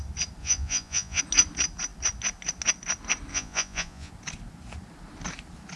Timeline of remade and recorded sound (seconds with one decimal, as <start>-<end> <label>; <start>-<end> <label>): 0.0-0.4 recorded; 0.4-1.2 remade; 1.2-3.3 recorded; 3.3-4.1 remade; 4.1-5.8 recorded